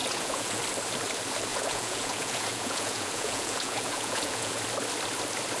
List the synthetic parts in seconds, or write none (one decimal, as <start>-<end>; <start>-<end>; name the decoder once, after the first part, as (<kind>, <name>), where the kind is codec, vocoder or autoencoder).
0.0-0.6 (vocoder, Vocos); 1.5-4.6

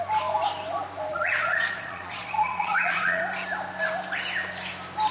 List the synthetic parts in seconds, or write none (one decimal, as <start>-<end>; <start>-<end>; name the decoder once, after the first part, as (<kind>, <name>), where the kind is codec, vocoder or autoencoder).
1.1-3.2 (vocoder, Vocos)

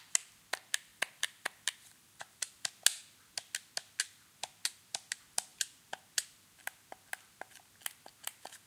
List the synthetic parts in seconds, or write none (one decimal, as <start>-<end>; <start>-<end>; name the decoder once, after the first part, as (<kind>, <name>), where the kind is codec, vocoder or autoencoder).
0.9-2.7 (vocoder, BigVGAN v2)

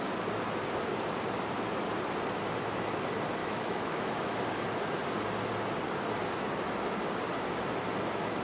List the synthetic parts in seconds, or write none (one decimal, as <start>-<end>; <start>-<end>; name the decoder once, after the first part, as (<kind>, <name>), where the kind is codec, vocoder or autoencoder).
3.4-4.4 (autoencoder, DAC-VAE)

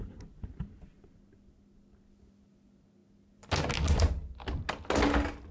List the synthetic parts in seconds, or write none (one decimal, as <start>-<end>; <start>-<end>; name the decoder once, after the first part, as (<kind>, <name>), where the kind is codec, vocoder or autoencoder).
none

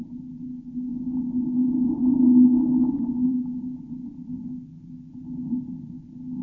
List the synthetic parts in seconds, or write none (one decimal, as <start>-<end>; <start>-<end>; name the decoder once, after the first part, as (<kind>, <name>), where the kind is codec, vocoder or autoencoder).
none